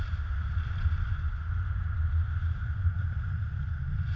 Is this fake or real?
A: real